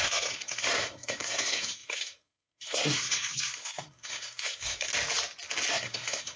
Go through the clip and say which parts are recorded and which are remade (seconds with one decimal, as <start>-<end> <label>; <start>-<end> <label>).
0.0-4.9 remade; 4.9-5.7 recorded; 5.7-6.4 remade